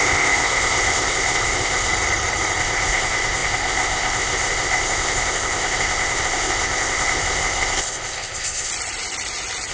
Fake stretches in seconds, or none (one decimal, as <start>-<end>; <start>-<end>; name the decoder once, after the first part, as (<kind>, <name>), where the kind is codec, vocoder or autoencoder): 0.0-1.9 (codec, ZipCodec); 2.6-8.7